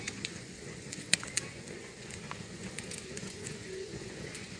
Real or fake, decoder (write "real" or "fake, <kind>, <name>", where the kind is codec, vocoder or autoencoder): fake, vocoder, Vocos